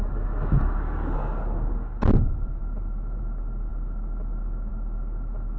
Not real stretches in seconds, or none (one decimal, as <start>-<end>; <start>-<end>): none